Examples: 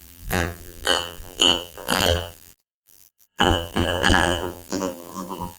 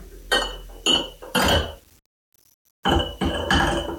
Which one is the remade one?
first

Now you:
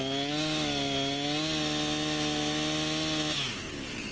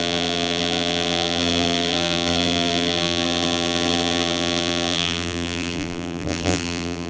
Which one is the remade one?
second